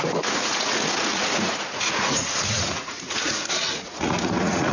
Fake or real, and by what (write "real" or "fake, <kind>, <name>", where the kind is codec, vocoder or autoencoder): fake, vocoder, Vocos